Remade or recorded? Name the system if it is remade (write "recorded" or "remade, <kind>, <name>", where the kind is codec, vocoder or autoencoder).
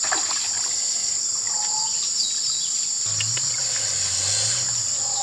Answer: recorded